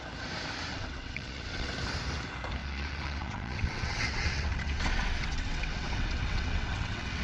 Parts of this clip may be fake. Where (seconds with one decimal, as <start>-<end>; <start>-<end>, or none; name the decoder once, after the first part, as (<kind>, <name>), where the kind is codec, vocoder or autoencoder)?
0.7-1.7 (vocoder, WaveNeXt); 2.6-7.2